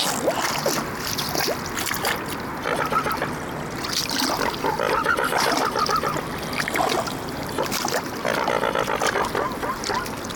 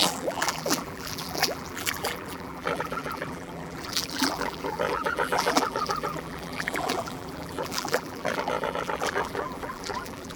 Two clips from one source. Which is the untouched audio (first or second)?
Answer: first